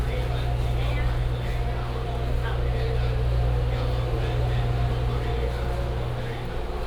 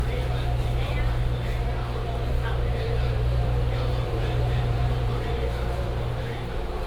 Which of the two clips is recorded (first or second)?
first